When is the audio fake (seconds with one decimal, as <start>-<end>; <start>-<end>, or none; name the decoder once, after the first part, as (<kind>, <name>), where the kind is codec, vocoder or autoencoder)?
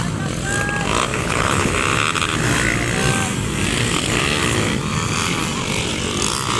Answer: 1.1-1.7 (codec, HILCodec)